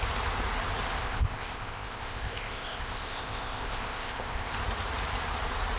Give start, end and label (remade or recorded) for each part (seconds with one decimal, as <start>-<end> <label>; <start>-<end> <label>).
0.0-1.0 recorded; 1.0-4.5 remade; 4.5-5.8 recorded